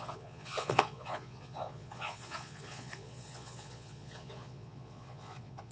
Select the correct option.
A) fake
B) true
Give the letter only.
A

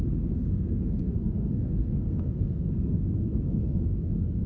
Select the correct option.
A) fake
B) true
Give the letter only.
A